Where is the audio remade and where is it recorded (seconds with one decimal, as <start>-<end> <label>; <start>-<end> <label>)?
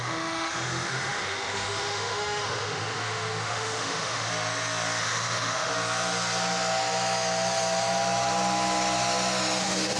0.0-4.3 remade; 4.3-5.0 recorded; 5.0-5.7 remade; 5.7-9.6 recorded; 9.6-10.0 remade